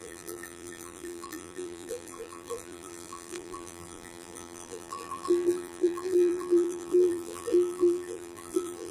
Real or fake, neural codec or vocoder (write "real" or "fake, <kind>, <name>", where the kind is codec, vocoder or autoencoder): fake, vocoder, BigVGAN v2